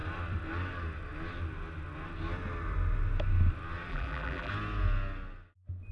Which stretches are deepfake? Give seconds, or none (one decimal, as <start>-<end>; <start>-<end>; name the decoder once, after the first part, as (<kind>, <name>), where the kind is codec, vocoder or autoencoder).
3.9-4.5 (vocoder, BigVGAN v2)